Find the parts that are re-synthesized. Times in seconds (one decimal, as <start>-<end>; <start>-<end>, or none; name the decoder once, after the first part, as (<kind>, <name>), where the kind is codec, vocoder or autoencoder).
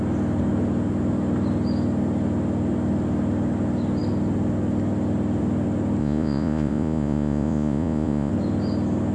6.0-8.3 (vocoder, Vocos)